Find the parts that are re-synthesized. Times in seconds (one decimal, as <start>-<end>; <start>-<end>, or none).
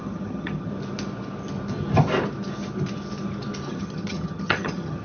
0.0-0.7; 3.7-5.0